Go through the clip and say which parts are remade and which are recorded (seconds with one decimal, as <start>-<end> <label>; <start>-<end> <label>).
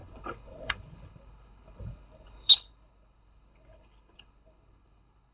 0.0-5.3 remade